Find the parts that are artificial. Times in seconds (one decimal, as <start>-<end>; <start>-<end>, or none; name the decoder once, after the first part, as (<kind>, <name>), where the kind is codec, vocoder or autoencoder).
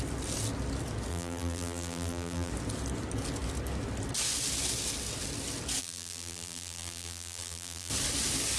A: 1.1-2.5 (vocoder, BigVGAN v2); 5.8-7.9